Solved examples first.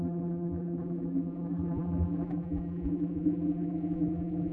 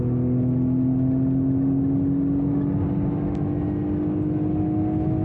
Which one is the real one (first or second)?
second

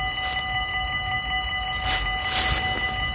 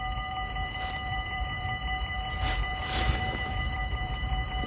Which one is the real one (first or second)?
first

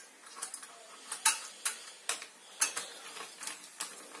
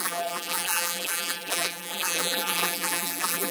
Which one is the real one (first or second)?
first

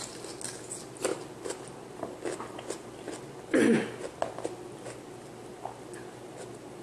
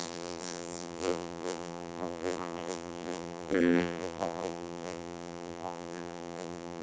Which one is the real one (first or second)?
first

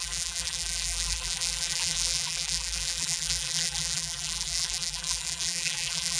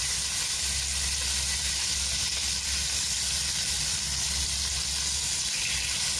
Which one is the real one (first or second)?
second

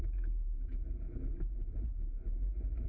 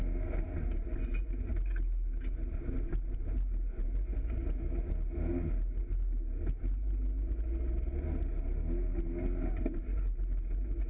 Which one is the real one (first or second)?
second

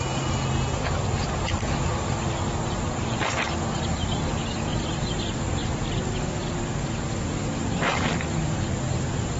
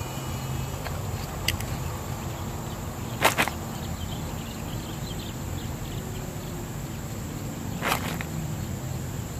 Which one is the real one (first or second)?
second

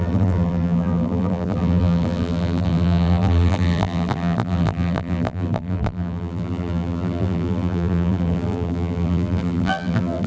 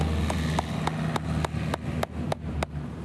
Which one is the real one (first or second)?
second